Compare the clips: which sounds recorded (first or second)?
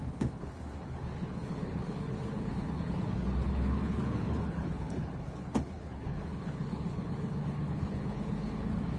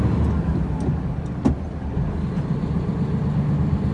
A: second